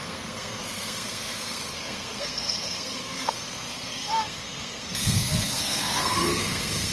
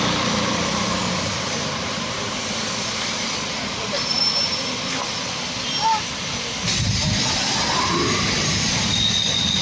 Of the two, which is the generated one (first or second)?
first